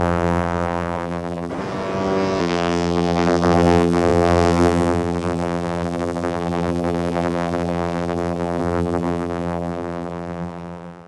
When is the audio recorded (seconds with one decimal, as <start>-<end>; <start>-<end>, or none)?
1.5-2.4